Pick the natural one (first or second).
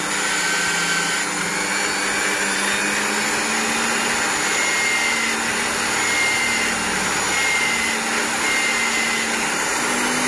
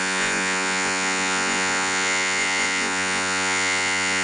first